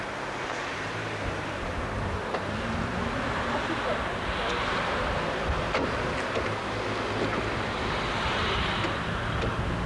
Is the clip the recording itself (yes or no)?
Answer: yes